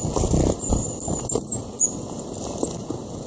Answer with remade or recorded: recorded